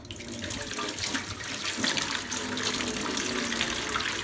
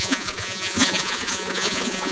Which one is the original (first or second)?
first